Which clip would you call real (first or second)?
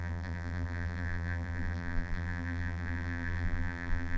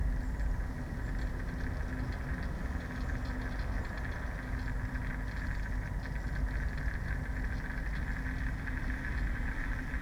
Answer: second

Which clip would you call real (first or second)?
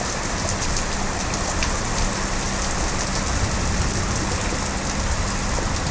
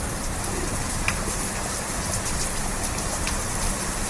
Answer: first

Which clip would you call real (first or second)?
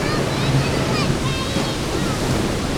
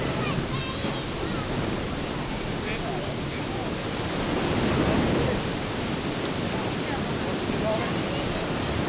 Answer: first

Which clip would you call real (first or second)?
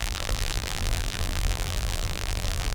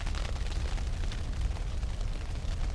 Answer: second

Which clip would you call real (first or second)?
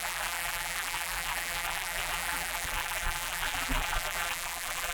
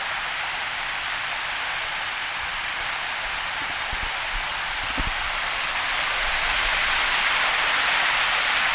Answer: second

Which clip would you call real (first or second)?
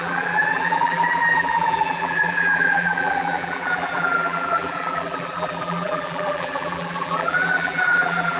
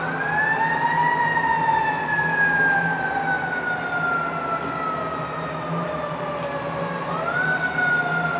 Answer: second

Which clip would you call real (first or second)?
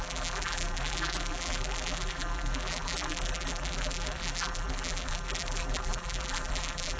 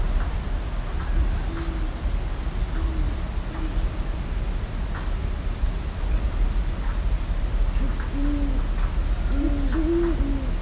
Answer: second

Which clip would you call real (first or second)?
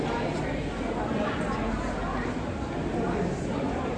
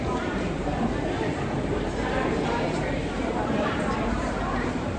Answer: first